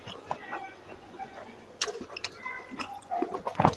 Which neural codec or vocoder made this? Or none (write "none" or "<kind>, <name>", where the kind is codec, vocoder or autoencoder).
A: vocoder, Vocos